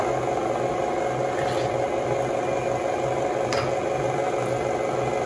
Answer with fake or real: real